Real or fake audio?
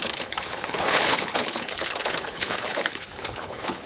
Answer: fake